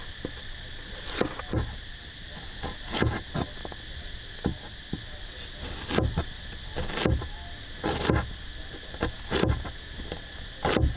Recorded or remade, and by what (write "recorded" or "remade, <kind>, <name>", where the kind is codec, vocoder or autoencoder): recorded